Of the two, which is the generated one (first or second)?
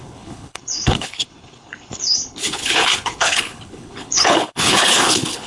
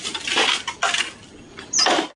first